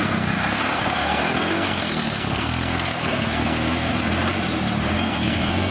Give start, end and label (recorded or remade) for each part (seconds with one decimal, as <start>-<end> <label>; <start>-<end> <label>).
0.0-3.9 remade; 3.9-4.9 recorded; 4.9-5.7 remade